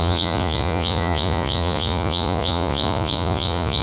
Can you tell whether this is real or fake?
fake